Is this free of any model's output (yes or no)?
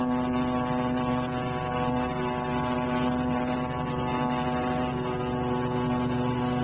yes